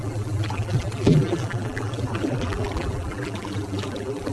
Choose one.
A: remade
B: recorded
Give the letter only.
A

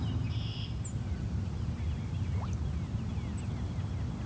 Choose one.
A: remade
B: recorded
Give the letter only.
B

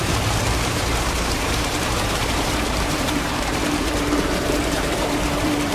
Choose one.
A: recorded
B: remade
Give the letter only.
B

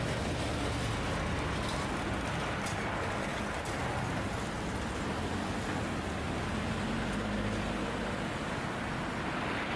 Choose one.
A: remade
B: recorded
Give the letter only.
B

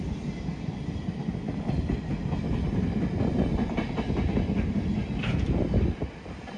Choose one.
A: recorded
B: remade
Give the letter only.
A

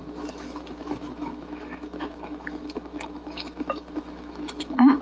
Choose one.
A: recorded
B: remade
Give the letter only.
B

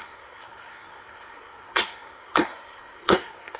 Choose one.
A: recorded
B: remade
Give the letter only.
B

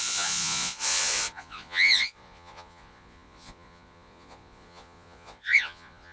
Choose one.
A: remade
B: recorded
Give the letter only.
A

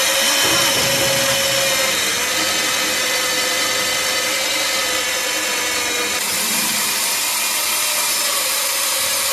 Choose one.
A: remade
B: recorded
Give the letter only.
B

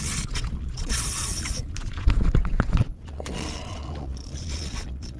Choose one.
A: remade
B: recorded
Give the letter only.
A